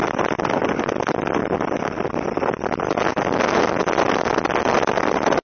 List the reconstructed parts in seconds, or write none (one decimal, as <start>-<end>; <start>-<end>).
none